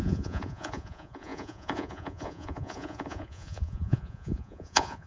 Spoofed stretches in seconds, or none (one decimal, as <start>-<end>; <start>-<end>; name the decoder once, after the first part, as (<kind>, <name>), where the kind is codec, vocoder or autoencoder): 0.0-5.1 (vocoder, Vocos)